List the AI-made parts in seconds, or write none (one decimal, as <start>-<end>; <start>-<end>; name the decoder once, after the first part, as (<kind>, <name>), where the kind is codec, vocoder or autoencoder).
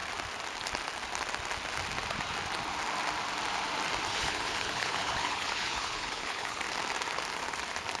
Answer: 4.2-6.6 (codec, HILCodec)